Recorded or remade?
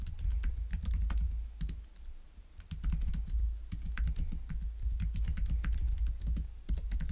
recorded